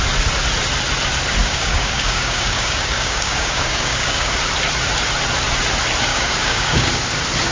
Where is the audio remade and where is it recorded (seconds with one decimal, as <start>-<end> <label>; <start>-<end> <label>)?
0.0-1.4 recorded; 1.4-4.3 remade; 4.3-6.1 recorded; 6.1-6.9 remade; 6.9-7.5 recorded